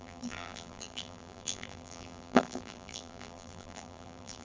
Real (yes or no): no